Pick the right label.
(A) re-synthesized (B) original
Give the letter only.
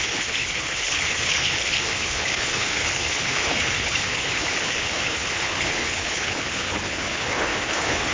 A